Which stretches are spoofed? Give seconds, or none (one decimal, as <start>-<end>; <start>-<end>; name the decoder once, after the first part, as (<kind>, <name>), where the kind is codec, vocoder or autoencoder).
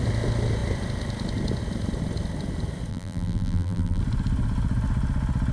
2.9-4.0 (vocoder, BigVGAN v2)